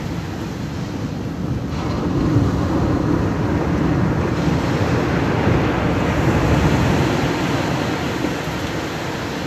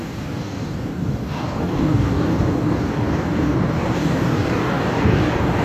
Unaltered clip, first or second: first